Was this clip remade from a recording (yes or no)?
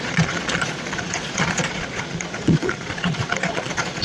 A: yes